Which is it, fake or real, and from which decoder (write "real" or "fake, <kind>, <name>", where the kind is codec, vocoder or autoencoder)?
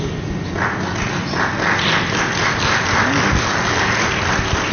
real